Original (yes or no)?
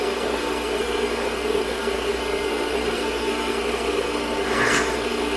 no